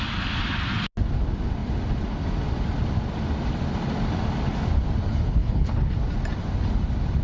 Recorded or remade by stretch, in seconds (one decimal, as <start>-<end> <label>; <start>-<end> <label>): 0.0-5.1 recorded; 5.1-5.9 remade; 5.9-7.2 recorded